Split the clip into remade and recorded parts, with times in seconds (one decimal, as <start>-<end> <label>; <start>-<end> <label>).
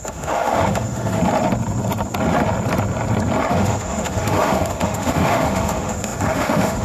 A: 0.0-1.2 remade; 1.2-3.5 recorded; 3.5-6.8 remade